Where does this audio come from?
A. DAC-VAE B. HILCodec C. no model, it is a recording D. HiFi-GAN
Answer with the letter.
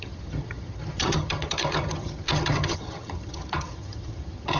D